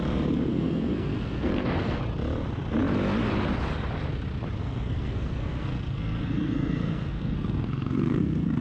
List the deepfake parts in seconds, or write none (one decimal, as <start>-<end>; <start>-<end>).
0.5-2.0; 4.6-8.6